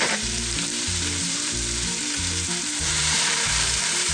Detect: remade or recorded remade